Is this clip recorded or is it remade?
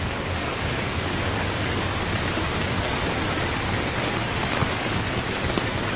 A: remade